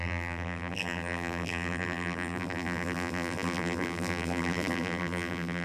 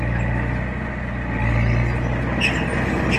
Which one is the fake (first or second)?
first